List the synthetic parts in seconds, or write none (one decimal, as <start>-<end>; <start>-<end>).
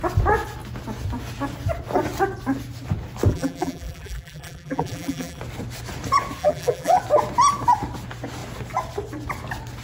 3.3-5.4; 6.4-7.0